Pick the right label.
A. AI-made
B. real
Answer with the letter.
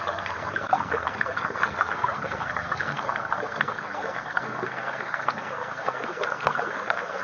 A